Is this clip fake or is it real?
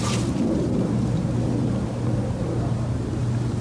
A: real